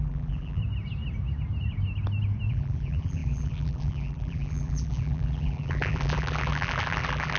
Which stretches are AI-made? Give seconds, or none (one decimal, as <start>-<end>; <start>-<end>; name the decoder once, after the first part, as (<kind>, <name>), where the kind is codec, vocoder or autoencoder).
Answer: 0.0-0.6 (vocoder, BigVGAN v2); 2.5-7.4